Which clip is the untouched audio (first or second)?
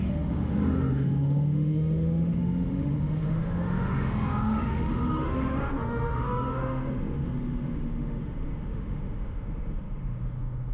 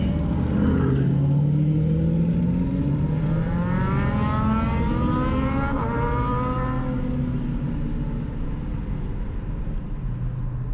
second